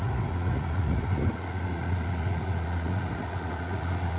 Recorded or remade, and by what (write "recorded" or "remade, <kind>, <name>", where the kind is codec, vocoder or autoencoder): remade, vocoder, Vocos